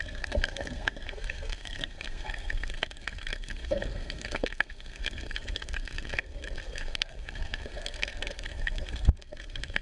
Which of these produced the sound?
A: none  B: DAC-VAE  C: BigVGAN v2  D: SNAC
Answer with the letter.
D